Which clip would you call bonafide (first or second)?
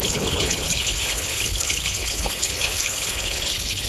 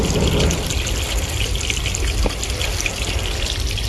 second